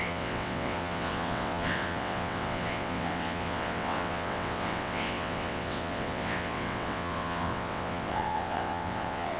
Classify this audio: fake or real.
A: fake